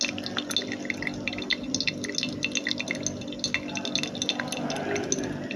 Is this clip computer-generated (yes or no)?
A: no